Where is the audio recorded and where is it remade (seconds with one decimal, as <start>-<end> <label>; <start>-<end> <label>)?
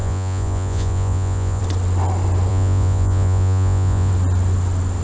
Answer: 0.0-1.6 remade; 1.6-2.5 recorded; 2.5-4.1 remade; 4.1-5.0 recorded